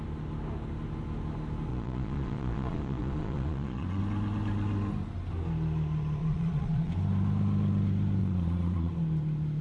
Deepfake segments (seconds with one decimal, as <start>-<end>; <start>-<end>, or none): 1.7-4.0; 6.2-6.9; 8.2-8.9